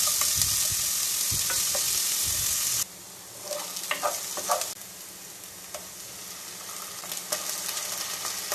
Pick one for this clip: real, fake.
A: real